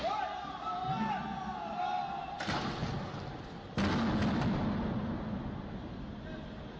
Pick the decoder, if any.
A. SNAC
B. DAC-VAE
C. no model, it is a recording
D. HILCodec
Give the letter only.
C